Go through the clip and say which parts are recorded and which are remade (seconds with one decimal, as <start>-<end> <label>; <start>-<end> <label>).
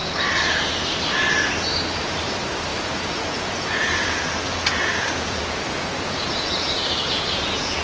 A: 0.0-2.7 recorded; 2.7-7.8 remade